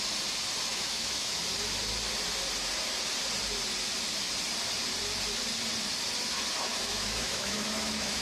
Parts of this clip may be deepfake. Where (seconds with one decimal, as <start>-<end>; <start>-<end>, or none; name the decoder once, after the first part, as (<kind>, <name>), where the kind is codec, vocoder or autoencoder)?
0.7-1.4 (autoencoder, DAC-VAE); 6.7-8.2